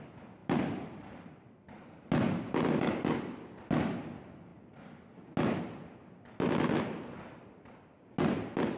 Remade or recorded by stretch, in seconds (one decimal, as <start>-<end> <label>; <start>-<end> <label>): 0.0-0.4 recorded; 0.4-2.1 remade; 2.1-8.8 recorded